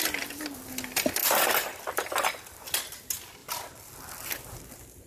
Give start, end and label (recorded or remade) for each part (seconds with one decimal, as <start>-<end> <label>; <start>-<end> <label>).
0.0-5.1 recorded